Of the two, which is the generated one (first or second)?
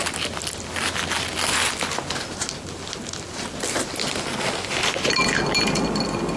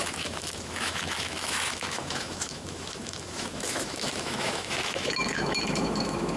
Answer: second